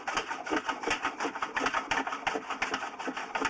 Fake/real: real